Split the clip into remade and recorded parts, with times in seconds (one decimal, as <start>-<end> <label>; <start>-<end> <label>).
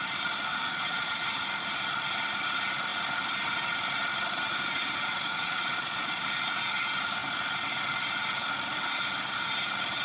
0.0-0.5 recorded; 0.5-1.3 remade; 1.3-5.1 recorded; 5.1-6.2 remade; 6.2-10.0 recorded